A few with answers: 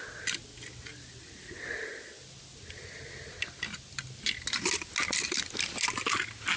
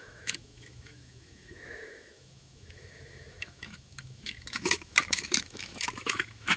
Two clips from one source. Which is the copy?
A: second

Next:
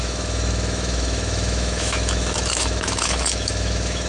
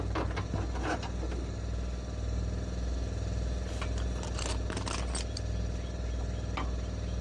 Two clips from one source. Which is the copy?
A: first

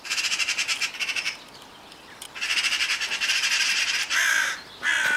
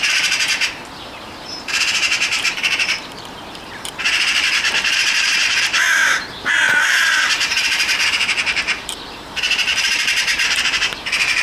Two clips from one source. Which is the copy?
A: second